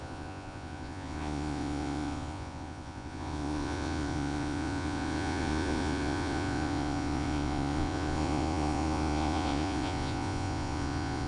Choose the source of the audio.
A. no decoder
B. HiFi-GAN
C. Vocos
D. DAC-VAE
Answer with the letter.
C